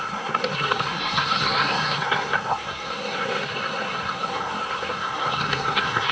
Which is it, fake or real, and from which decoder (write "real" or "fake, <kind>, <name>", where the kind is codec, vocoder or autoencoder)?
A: fake, codec, SNAC